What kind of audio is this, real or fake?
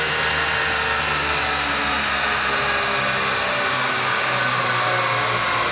real